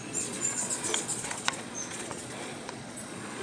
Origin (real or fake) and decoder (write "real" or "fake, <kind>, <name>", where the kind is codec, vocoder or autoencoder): fake, vocoder, Vocos